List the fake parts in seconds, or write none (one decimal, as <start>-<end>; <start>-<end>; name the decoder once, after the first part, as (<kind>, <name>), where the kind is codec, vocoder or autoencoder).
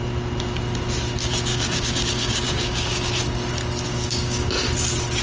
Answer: 1.5-3.1 (codec, DAC); 3.9-4.5